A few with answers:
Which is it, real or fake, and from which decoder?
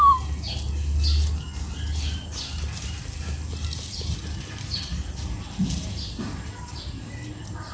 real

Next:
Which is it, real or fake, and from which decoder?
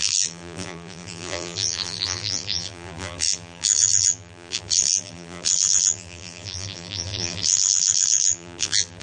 fake, vocoder, BigVGAN v2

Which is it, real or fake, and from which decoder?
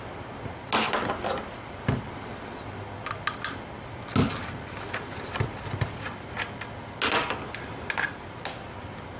real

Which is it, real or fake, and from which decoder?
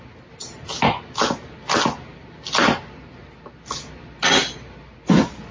real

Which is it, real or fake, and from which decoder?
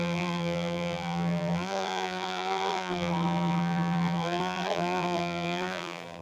fake, vocoder, BigVGAN v2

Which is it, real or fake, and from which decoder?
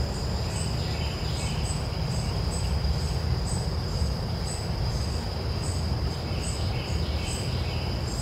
fake, vocoder, BigVGAN v2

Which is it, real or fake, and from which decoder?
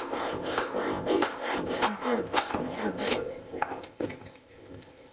fake, codec, ZipCodec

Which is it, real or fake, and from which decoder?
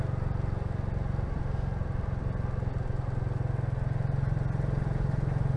real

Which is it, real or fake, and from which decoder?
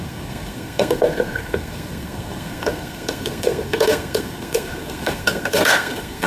fake, codec, SNAC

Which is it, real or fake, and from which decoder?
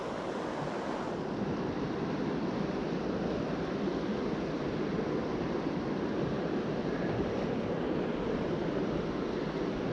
real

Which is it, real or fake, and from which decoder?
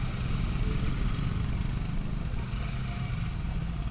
real